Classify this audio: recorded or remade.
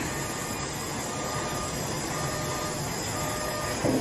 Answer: recorded